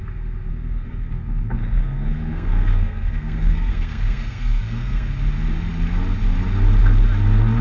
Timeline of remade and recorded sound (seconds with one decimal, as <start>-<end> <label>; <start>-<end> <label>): 0.0-0.5 recorded; 0.5-5.1 remade; 5.1-7.6 recorded